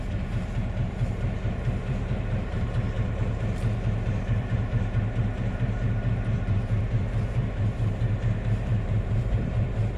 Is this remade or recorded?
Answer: remade